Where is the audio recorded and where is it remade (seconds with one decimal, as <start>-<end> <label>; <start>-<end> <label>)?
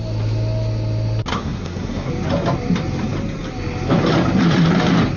0.0-1.3 recorded; 1.3-2.1 remade; 2.1-5.2 recorded